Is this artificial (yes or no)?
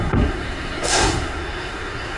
yes